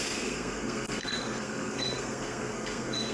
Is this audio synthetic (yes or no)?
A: yes